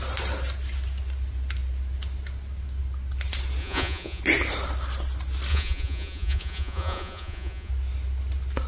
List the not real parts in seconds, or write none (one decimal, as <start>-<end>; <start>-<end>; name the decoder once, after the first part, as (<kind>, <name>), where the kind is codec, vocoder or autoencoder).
3.6-4.2 (vocoder, Vocos); 5.5-7.7